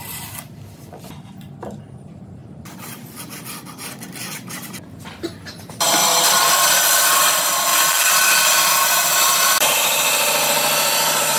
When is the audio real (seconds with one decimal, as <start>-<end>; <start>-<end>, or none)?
7.7-9.2